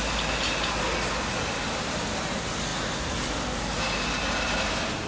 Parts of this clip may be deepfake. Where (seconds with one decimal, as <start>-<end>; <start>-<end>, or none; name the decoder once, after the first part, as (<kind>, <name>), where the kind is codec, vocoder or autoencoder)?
none

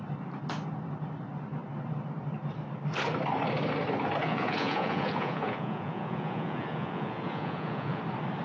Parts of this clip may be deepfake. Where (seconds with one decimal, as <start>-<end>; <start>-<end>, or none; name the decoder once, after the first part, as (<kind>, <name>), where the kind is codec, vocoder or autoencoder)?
4.2-8.0 (vocoder, Vocos)

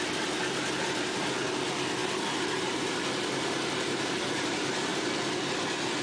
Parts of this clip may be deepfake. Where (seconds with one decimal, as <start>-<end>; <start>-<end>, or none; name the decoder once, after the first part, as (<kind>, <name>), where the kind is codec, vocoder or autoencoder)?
none

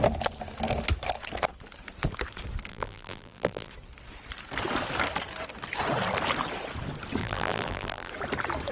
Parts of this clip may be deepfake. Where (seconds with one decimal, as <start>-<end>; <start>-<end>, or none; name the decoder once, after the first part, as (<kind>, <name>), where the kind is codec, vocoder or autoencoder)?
2.7-3.7 (vocoder, BigVGAN v2); 7.2-8.1

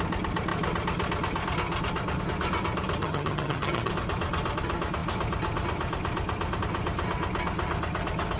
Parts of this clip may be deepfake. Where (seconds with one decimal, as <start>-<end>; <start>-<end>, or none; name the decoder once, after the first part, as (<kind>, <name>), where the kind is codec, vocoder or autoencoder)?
3.0-3.9 (vocoder, HiFi-GAN)

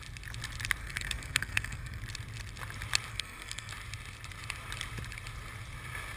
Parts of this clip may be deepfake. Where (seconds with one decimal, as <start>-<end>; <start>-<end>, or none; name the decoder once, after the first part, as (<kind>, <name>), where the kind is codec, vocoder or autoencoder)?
0.8-2.0 (codec, SNAC); 3.1-3.7

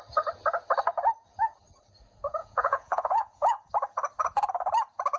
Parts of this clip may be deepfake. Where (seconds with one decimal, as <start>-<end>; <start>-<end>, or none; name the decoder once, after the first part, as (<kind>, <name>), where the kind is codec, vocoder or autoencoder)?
2.4-3.7 (vocoder, Vocos)